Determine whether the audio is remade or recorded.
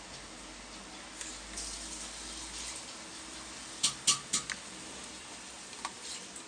recorded